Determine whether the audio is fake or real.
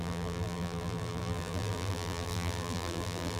fake